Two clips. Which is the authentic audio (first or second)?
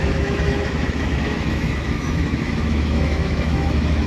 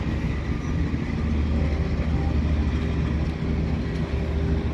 second